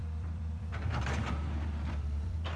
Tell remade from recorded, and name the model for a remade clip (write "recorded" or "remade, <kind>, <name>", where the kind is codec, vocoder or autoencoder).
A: remade, vocoder, BigVGAN v2